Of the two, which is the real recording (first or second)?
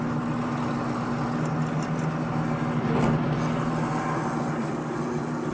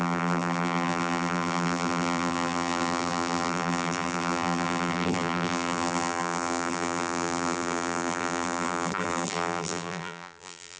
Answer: first